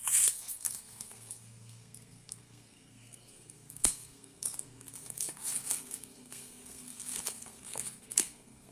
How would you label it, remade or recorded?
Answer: remade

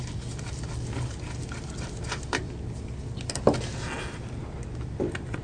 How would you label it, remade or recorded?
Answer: recorded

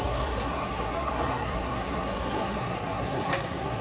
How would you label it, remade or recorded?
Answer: remade